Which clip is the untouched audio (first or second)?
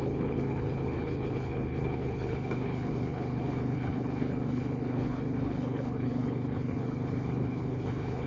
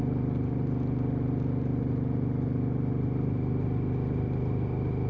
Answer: second